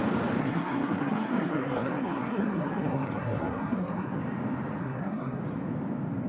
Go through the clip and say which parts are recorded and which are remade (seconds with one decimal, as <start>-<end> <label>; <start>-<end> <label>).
0.0-0.4 recorded; 0.4-4.2 remade; 4.2-4.8 recorded; 4.8-5.4 remade; 5.4-6.3 recorded